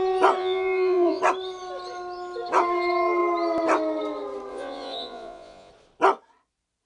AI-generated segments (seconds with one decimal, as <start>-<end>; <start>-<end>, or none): 0.4-1.2; 4.5-5.7